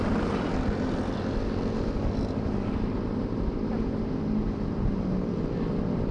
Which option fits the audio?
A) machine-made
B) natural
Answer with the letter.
B